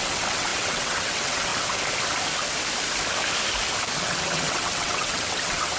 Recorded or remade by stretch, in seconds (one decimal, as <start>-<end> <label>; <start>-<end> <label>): 0.0-1.5 remade; 1.5-4.0 recorded; 4.0-5.8 remade